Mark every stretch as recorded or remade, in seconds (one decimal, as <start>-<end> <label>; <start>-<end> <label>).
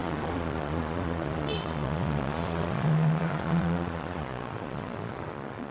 0.0-5.7 remade